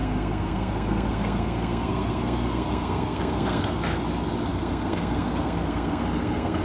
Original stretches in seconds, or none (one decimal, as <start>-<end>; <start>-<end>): 4.0-4.5